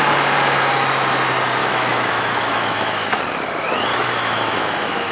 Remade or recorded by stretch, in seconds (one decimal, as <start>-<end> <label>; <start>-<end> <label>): 0.0-1.6 recorded; 1.6-3.2 remade; 3.2-3.9 recorded; 3.9-5.1 remade